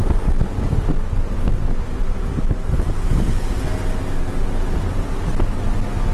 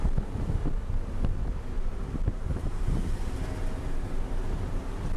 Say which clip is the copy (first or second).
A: second